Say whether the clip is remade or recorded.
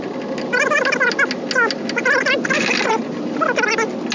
recorded